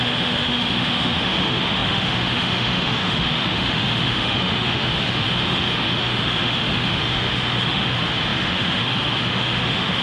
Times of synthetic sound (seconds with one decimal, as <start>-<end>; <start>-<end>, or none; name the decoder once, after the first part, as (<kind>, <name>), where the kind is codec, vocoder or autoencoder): 0.0-10.0 (autoencoder, DAC-VAE)